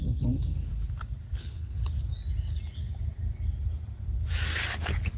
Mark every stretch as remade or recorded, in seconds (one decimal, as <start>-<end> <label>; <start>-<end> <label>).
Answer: 0.0-0.7 remade; 0.7-1.4 recorded; 1.4-1.8 remade; 1.8-5.2 recorded